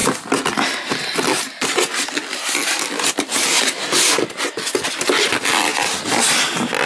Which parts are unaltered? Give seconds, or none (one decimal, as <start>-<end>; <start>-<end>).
0.0-6.9